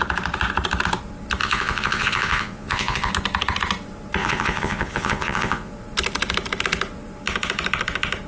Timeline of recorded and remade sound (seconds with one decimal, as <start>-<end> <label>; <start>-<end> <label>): 0.0-1.4 recorded; 1.4-3.1 remade; 3.1-4.2 recorded; 4.2-5.7 remade; 5.7-8.3 recorded